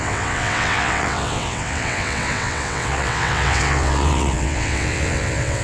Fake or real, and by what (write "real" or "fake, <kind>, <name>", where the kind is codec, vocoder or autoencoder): fake, vocoder, WaveNeXt